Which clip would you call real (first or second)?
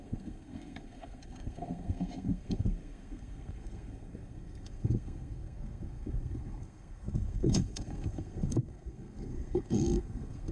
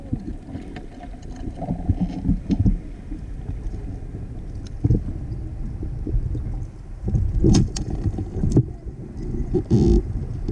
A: second